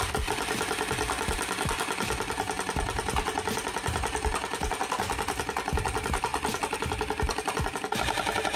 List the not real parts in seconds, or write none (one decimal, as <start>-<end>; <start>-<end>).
none